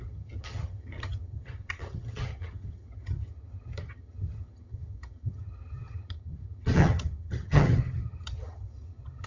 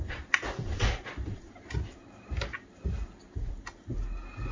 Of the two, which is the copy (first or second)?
first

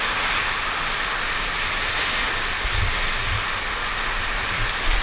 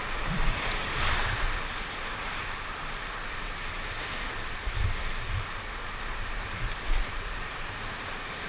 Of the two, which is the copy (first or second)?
second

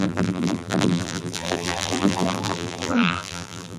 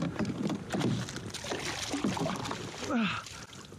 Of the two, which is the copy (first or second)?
first